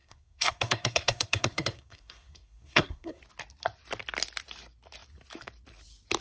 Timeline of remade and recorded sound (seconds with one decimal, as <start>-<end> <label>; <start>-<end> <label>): 0.0-3.2 remade; 3.2-6.2 recorded